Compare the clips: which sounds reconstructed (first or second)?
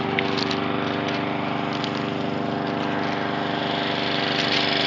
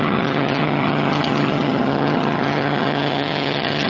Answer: second